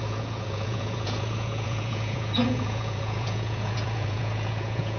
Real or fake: fake